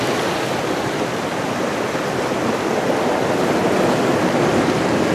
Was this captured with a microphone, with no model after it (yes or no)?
yes